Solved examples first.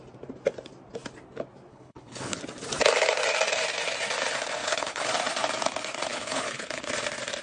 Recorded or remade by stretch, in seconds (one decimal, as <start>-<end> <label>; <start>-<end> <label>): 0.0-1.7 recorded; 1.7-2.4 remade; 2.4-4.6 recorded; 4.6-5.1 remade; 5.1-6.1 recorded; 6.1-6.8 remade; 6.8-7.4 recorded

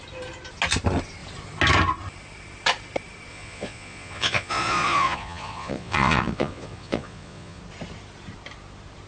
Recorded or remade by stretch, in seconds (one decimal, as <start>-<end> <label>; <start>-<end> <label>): 0.0-3.3 recorded; 3.3-7.6 remade; 7.6-9.1 recorded

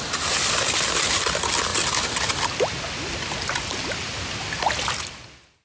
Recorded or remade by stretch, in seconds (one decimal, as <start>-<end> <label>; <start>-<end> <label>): 0.0-5.6 recorded